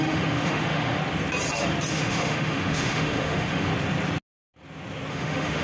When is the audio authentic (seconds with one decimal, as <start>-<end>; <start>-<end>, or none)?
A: 1.0-1.9; 3.7-5.1

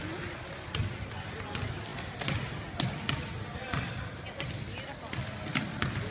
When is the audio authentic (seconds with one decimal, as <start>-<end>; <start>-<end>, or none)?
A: 0.8-6.1

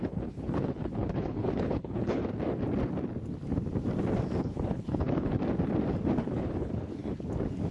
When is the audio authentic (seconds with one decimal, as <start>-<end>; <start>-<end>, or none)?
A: 2.2-4.4; 5.3-6.2; 7.0-7.7

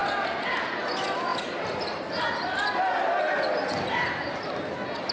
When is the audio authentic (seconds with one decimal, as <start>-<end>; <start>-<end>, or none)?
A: 0.0-5.1

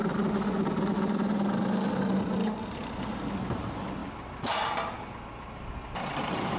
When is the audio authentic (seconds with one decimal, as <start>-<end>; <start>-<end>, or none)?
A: 0.0-6.6

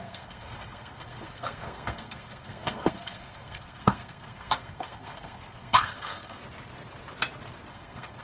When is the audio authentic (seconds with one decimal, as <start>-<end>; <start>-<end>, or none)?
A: 6.4-7.7

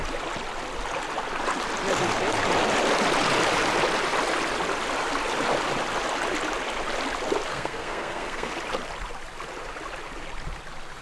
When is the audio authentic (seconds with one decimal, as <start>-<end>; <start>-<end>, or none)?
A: 0.0-7.5; 8.5-11.0